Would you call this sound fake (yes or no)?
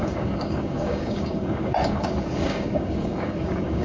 yes